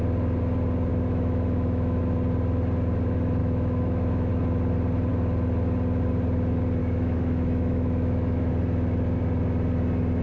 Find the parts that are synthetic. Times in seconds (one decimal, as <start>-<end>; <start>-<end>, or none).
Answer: 0.9-2.0; 3.4-4.3; 6.8-8.5